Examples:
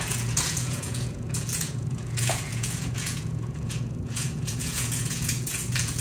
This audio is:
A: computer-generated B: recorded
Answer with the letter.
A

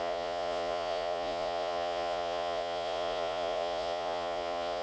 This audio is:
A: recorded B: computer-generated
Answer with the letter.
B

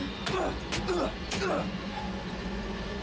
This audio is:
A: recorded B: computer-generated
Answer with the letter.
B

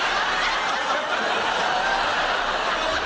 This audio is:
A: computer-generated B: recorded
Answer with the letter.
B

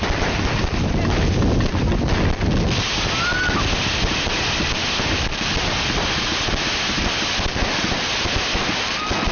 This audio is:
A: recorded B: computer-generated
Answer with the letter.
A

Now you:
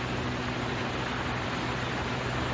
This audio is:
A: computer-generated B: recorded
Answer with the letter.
B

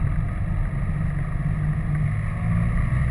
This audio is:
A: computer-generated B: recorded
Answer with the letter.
B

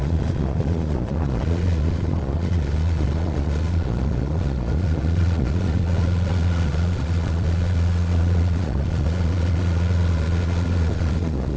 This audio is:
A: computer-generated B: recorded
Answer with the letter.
A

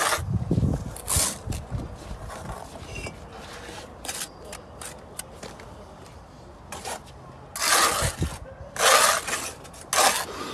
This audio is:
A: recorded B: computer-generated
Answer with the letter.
A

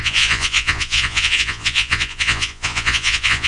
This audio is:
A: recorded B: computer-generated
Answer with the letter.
B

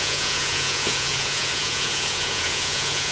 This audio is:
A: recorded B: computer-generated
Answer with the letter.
B